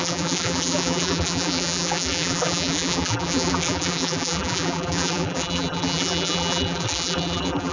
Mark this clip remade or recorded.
remade